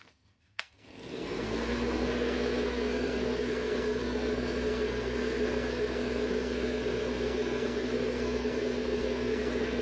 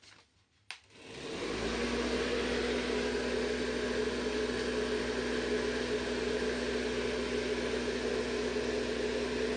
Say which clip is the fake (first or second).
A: first